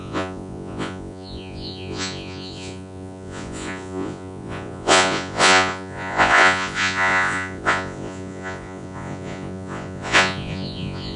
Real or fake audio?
fake